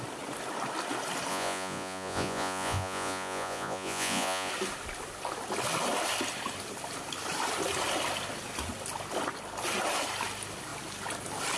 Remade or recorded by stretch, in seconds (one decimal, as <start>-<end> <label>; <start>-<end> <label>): 0.0-1.3 recorded; 1.3-4.5 remade; 4.5-11.6 recorded